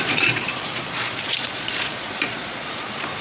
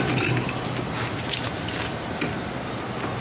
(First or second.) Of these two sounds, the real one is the second